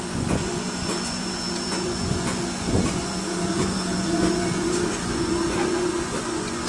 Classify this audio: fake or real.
fake